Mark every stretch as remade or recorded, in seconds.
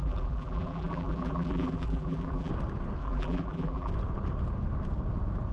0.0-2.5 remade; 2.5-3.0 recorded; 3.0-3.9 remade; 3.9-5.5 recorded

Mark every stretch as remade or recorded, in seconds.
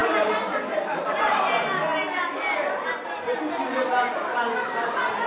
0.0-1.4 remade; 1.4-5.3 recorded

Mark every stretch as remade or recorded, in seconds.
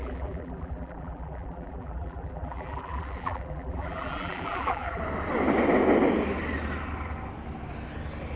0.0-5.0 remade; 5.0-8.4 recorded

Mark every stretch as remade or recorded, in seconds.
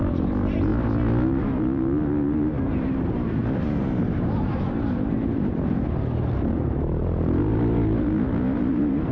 0.0-0.7 remade; 0.7-2.7 recorded; 2.7-9.1 remade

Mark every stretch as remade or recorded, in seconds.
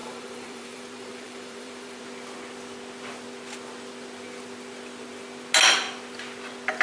0.0-2.0 remade; 2.0-6.8 recorded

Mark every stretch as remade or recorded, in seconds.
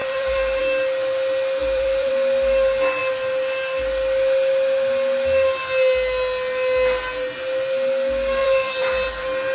0.0-0.6 remade; 0.6-1.6 recorded; 1.6-2.1 remade; 2.1-8.4 recorded; 8.4-9.1 remade; 9.1-9.5 recorded